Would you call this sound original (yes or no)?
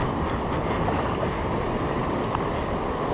yes